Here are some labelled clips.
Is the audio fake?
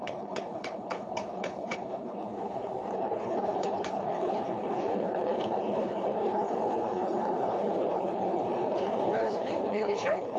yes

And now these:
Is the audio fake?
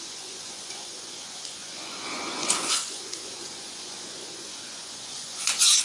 yes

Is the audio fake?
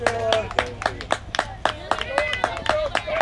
no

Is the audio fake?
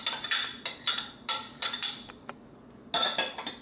no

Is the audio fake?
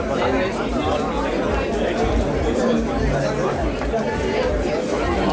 no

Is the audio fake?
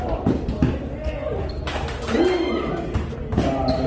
no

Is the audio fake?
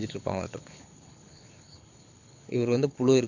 yes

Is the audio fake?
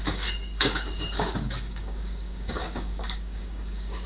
yes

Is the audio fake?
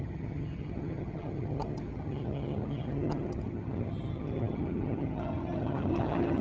yes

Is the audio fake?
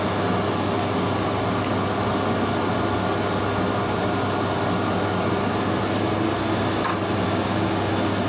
no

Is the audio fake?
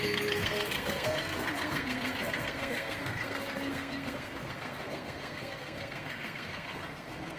yes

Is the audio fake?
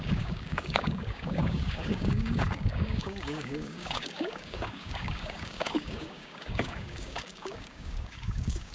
yes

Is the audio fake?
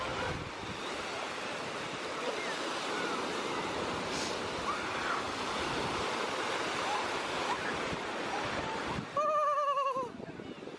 no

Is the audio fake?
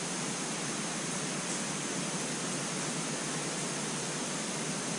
no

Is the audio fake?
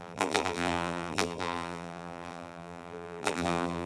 yes